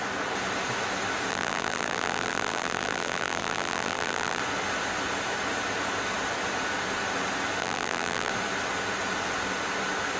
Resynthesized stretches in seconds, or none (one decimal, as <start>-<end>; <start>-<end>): 1.3-4.4; 7.6-8.3